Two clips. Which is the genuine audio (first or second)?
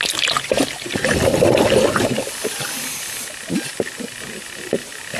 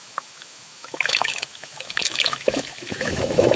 first